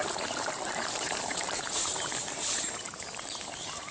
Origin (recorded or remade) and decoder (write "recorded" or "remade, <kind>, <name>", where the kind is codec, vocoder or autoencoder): remade, vocoder, BigVGAN v2